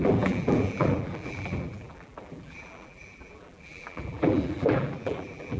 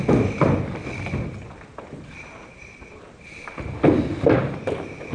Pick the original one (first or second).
second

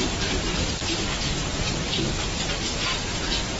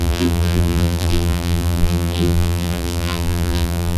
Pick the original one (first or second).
first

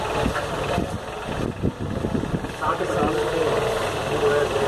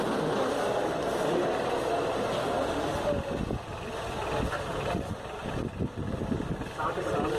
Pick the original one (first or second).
first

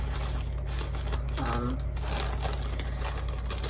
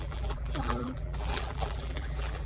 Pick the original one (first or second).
first